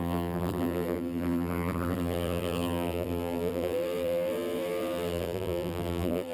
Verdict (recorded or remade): remade